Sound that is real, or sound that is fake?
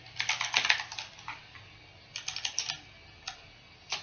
real